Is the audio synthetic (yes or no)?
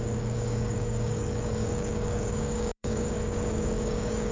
yes